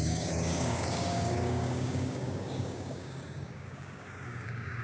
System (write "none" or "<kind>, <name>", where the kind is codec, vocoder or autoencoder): codec, DAC